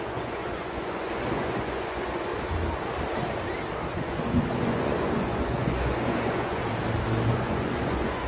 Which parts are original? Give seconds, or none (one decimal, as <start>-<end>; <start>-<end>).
2.3-3.9; 6.6-7.3

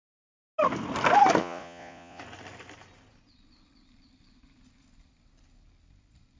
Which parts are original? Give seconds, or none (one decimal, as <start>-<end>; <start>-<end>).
0.0-1.4; 2.2-6.4

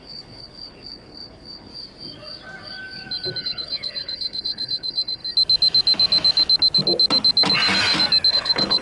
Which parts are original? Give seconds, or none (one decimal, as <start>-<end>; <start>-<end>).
1.7-3.4; 5.2-8.3

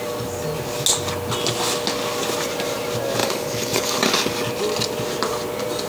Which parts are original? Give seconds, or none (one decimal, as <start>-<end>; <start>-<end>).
0.0-3.2; 4.5-5.9

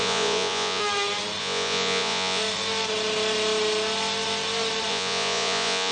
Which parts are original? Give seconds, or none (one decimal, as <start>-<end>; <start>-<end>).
0.8-1.4; 2.4-4.9